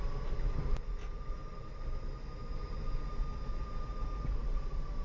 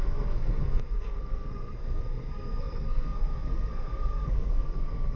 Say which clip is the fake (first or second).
second